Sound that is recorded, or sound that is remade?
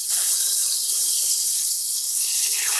remade